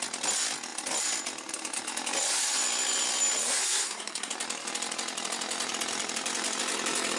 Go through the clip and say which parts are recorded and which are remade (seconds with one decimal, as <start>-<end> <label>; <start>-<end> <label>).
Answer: 0.0-3.6 recorded; 3.6-4.3 remade; 4.3-7.2 recorded